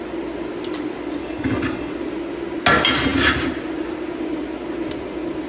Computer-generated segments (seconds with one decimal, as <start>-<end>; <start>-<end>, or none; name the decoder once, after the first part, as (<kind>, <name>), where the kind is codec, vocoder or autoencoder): 1.2-1.9 (codec, DAC)

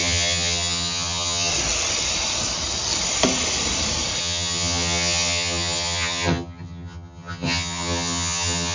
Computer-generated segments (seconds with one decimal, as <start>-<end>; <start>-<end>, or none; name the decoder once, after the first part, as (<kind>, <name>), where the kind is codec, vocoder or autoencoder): 0.0-1.5 (vocoder, HiFi-GAN); 4.2-8.7

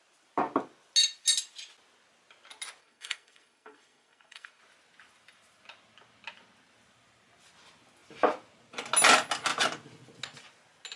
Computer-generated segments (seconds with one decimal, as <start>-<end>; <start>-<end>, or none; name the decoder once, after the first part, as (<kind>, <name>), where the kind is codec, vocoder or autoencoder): 2.8-4.6 (codec, SNAC)

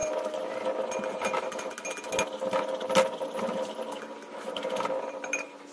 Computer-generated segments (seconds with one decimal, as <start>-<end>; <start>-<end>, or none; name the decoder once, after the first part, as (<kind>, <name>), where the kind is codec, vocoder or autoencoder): none

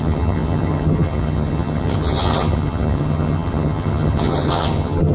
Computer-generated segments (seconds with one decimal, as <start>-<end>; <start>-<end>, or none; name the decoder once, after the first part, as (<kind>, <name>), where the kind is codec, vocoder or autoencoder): 0.0-5.1 (vocoder, HiFi-GAN)

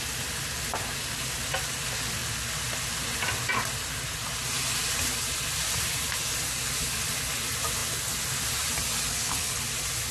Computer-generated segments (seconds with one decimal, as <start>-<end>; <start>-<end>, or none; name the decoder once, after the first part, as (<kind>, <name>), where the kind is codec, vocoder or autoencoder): 9.1-9.6 (codec, HILCodec)